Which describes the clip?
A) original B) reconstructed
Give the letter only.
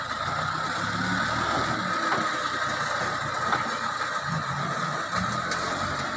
A